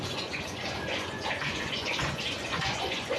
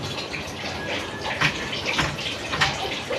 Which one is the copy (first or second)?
first